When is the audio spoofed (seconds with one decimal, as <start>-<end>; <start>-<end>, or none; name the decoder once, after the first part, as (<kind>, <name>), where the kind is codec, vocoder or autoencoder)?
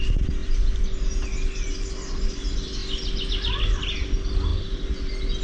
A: none